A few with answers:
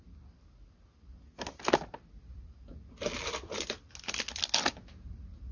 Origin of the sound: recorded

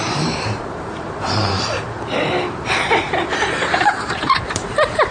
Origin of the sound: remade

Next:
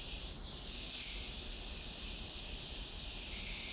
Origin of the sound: remade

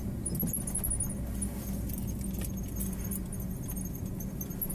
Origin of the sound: recorded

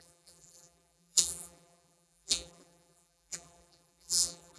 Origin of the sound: remade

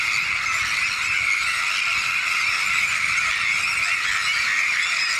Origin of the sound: recorded